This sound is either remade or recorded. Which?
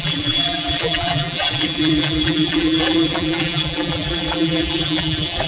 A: remade